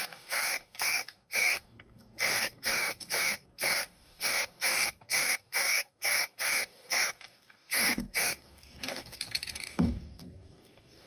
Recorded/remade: remade